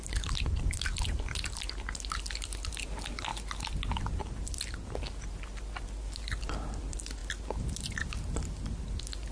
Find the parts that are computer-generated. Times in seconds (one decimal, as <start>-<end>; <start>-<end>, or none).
none